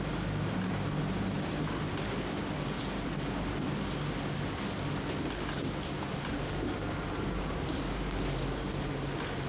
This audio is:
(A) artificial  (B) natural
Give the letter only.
B